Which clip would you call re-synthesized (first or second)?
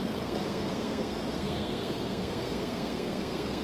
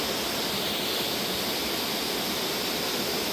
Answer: first